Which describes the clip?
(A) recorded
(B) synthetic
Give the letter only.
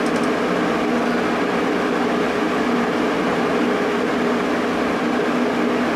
A